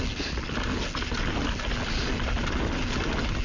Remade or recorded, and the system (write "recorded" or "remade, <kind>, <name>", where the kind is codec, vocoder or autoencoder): recorded